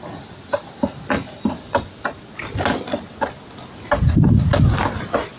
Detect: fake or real real